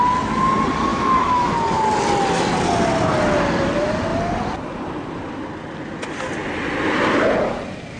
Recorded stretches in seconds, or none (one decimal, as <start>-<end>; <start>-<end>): 0.0-0.9; 1.5-8.0

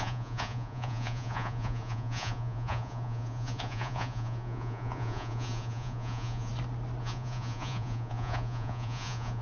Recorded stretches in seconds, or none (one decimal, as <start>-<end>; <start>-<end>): 6.5-7.0

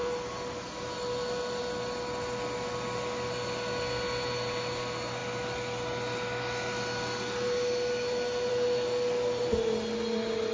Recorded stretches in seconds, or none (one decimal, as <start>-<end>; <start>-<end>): 0.0-10.5